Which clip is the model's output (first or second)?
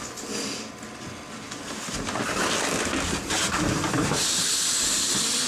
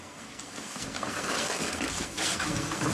second